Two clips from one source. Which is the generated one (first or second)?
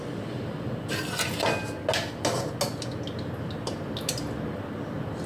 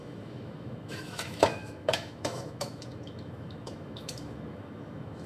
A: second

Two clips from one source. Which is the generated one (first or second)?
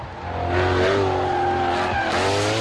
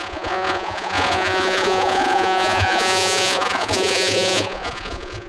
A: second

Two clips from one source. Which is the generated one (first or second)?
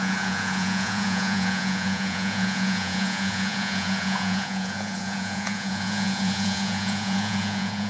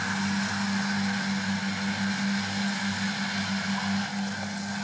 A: first